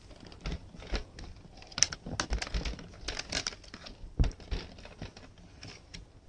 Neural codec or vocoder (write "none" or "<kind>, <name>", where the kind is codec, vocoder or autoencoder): none